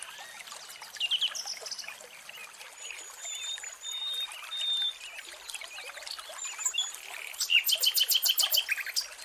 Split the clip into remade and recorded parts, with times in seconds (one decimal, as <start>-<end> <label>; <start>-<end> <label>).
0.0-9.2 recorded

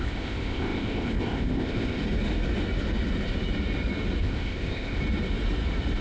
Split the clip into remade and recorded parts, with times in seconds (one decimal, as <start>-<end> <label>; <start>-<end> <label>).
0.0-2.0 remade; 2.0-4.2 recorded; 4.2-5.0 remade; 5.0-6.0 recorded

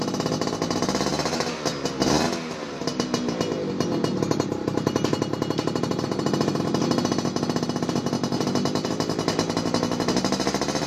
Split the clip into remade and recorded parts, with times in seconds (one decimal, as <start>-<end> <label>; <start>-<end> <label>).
0.0-10.9 recorded